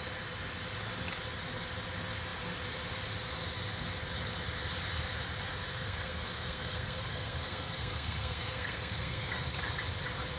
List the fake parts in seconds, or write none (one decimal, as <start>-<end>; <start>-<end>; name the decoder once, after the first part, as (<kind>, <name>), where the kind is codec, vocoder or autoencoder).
5.7-9.4 (codec, SNAC)